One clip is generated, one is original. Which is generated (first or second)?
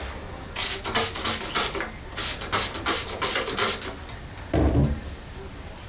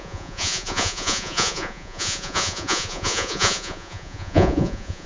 second